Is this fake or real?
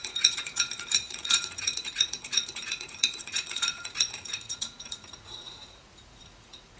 fake